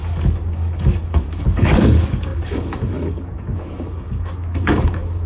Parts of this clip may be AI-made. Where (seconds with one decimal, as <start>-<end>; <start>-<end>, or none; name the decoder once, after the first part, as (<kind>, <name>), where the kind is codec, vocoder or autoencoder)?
0.0-5.3 (codec, DAC)